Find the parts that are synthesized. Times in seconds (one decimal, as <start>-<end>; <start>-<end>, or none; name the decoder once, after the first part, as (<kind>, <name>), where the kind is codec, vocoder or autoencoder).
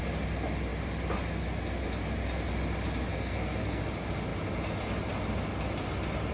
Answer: 3.1-3.8 (codec, SNAC)